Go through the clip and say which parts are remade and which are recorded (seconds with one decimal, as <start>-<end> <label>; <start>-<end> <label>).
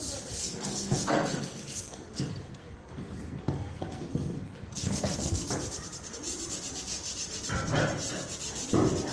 0.0-0.4 recorded; 0.4-5.5 remade; 5.5-9.1 recorded